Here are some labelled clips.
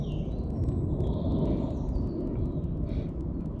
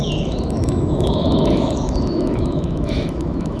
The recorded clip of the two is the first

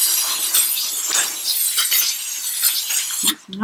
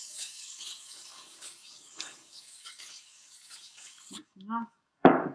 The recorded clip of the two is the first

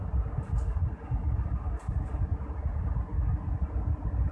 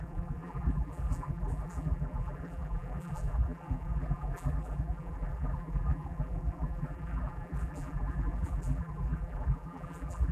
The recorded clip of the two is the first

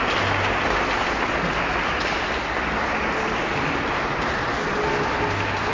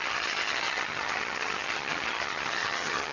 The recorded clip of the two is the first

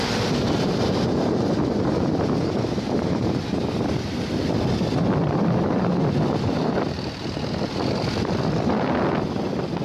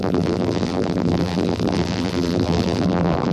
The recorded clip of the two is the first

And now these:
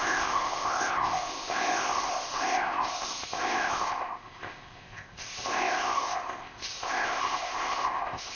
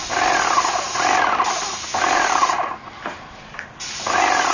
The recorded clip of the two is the second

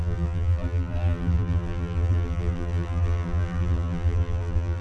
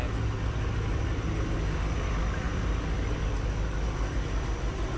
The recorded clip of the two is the second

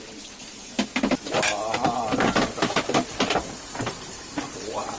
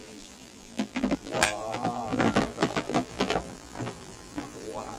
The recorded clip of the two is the first